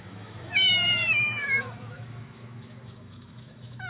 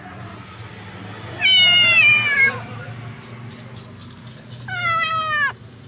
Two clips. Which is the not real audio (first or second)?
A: first